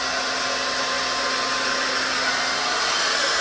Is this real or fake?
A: real